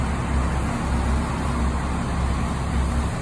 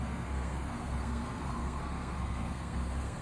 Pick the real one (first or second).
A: first